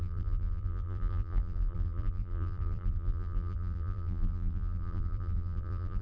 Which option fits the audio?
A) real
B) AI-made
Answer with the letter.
B